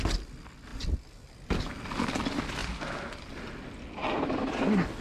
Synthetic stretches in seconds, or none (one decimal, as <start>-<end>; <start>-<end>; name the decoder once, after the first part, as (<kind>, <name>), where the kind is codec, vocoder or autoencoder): none